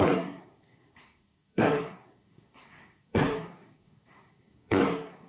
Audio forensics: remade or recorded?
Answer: remade